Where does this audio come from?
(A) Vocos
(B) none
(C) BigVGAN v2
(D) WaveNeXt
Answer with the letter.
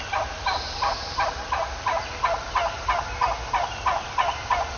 B